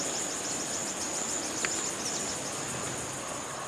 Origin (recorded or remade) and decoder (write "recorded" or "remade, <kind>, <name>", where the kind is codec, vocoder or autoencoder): recorded